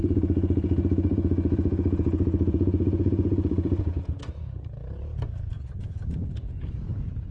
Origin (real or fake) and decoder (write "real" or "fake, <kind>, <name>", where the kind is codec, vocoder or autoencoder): fake, vocoder, Vocos